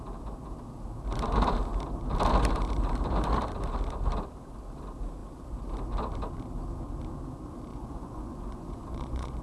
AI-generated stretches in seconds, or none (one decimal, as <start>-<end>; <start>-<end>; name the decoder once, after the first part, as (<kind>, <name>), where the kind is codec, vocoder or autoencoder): 7.7-9.4 (vocoder, Vocos)